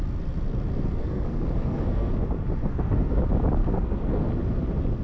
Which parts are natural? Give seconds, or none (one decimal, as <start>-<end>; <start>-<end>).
0.0-1.0; 2.1-2.6; 3.2-3.6; 4.3-5.0